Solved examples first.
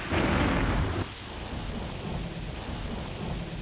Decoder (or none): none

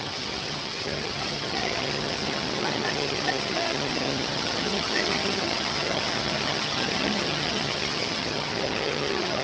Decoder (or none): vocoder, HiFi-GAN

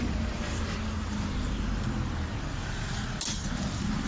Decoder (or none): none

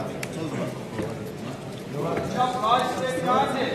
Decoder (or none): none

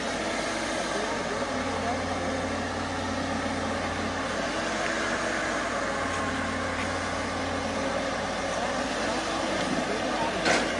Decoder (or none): none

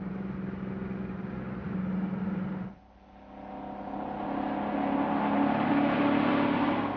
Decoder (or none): none